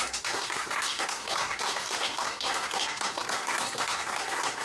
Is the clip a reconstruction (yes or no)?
yes